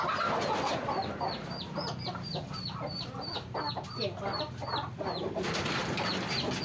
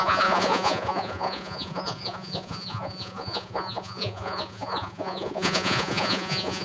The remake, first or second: second